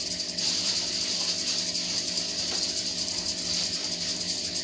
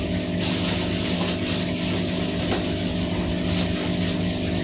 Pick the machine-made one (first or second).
first